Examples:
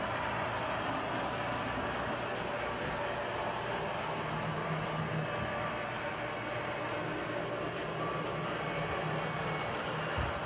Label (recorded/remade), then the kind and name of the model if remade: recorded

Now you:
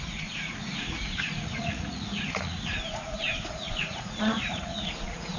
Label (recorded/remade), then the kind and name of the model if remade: remade, vocoder, Vocos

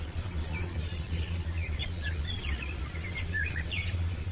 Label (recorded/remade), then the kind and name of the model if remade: remade, vocoder, Vocos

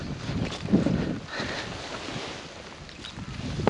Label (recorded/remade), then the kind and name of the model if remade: recorded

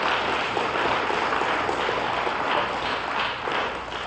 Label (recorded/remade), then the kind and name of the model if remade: recorded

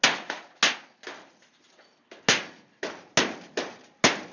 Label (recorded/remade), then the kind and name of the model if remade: recorded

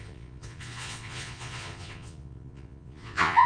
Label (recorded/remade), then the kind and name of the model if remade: remade, vocoder, Vocos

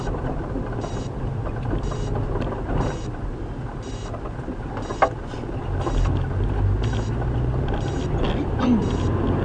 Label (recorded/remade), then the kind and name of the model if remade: recorded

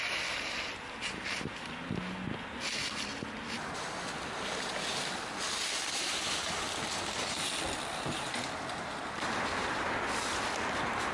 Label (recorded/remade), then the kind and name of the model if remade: recorded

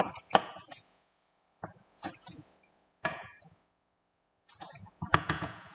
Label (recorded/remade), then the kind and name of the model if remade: remade, vocoder, Vocos